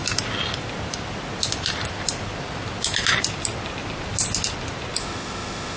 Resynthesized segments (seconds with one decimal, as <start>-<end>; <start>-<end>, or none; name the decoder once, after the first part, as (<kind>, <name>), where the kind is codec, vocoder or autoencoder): 5.0-5.8 (autoencoder, DAC-VAE)